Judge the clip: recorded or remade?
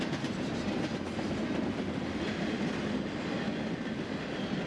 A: recorded